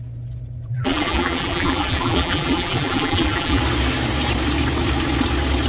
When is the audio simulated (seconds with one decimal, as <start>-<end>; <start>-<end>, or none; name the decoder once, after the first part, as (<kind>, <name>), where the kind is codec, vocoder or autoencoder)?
0.7-3.6 (vocoder, BigVGAN v2)